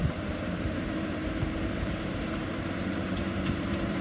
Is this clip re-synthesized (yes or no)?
yes